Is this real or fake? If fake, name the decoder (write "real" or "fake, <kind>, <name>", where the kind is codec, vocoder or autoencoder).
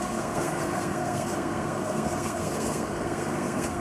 fake, codec, SNAC